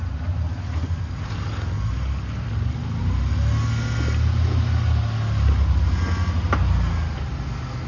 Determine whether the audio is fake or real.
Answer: real